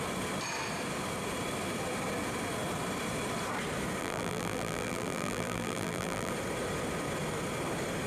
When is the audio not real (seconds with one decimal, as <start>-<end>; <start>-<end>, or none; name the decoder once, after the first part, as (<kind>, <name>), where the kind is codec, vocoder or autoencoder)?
4.0-6.3 (vocoder, BigVGAN v2)